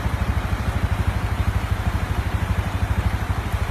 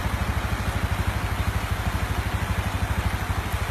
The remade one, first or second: first